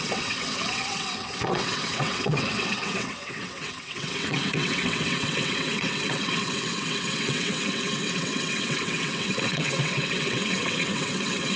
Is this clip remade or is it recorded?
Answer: remade